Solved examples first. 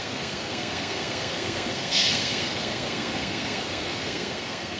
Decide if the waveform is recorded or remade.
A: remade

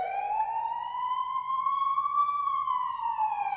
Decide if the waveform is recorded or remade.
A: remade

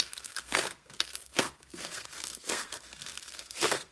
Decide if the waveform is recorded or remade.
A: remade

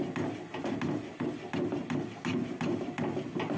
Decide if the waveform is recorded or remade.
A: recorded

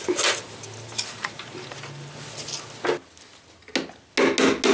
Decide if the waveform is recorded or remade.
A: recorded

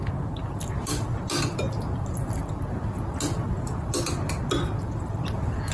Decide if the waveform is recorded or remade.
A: recorded